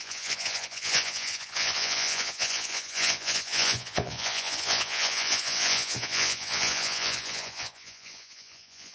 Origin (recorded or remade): remade